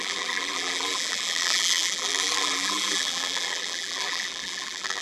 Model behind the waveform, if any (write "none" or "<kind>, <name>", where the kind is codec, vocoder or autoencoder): vocoder, BigVGAN v2